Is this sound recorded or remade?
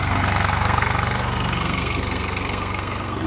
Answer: remade